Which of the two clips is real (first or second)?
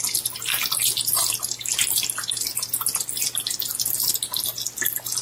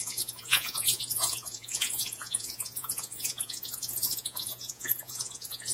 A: first